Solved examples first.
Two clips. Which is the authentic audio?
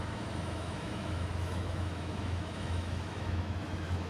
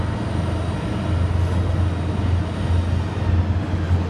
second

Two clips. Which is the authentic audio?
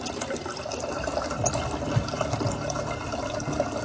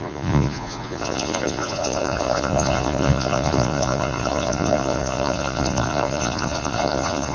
first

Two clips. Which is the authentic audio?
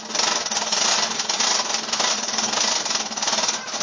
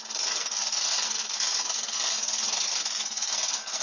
first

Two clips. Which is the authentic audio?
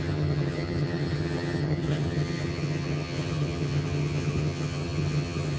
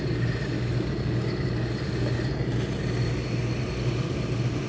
second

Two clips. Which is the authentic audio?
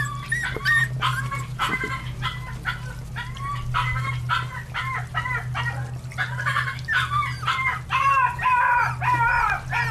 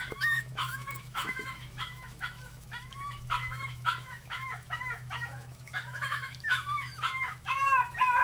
first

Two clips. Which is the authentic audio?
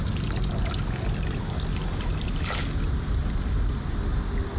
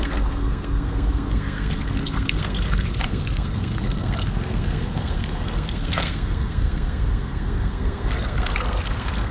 first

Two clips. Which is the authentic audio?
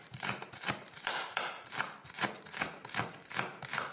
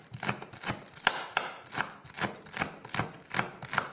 second